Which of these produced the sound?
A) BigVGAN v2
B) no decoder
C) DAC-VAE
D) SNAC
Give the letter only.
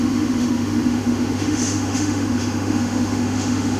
C